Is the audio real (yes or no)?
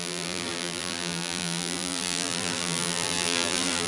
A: no